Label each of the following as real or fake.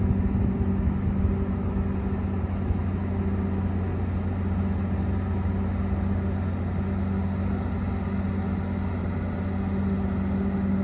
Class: real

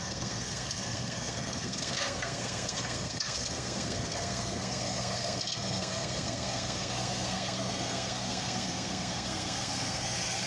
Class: fake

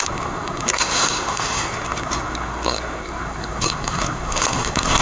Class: fake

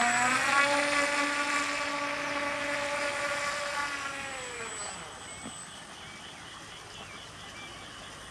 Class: real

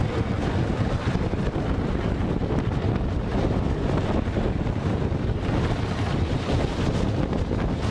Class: real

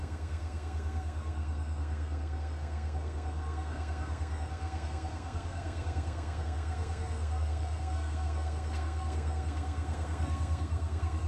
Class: fake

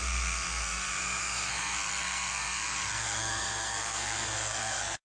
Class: fake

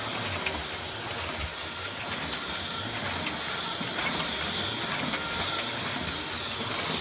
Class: real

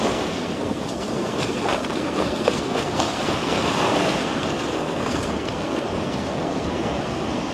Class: fake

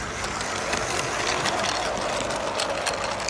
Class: real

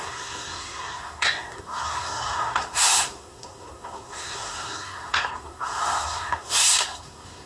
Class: fake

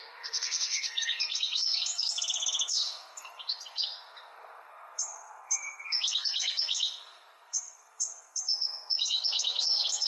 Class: fake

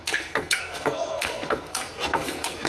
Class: fake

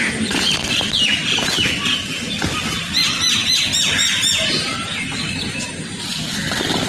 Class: real